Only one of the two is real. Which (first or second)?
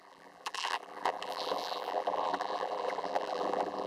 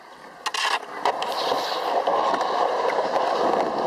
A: second